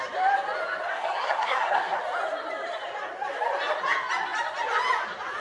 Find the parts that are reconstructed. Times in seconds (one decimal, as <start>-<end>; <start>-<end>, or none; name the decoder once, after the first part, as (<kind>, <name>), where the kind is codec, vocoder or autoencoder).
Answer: 0.9-2.0 (codec, SNAC)